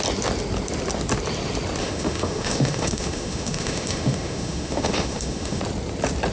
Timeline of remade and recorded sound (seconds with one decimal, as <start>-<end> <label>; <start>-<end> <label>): 0.0-1.8 recorded; 1.8-5.6 remade; 5.6-6.3 recorded